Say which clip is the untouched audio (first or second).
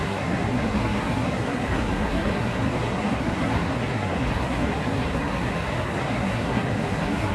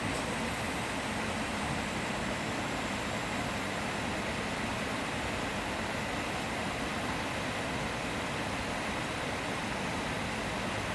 second